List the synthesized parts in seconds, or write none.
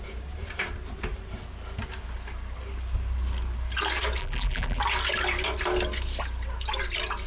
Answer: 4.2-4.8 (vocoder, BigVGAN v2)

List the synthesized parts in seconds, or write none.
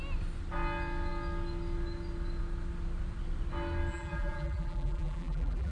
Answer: 3.9-5.7 (vocoder, BigVGAN v2)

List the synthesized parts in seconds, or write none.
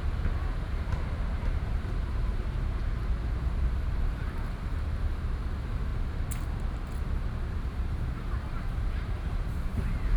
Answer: 0.0-2.8 (vocoder, BigVGAN v2); 3.4-5.9; 7.9-10.2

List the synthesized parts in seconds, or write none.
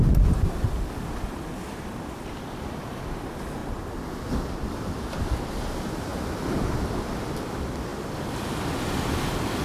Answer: 3.6-5.6 (vocoder, BigVGAN v2)